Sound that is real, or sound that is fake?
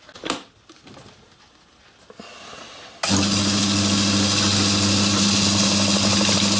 real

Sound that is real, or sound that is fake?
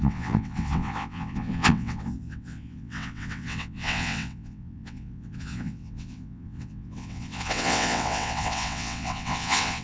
fake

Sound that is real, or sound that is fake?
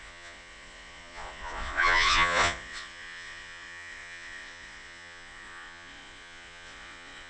fake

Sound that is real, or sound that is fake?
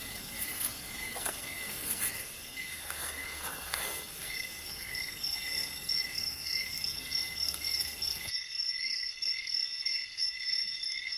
fake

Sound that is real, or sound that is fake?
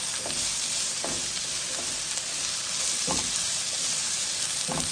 real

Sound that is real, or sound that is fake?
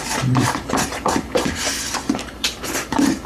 fake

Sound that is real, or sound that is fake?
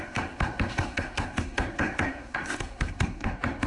fake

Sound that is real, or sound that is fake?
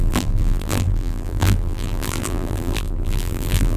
fake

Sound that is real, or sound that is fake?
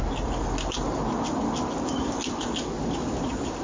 real